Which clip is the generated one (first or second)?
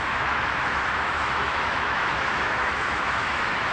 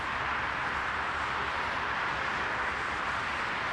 first